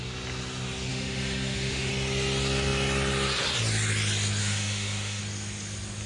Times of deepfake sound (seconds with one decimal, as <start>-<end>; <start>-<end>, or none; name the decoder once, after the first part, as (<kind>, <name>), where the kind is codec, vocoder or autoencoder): 0.9-1.9 (autoencoder, DAC-VAE); 4.4-5.2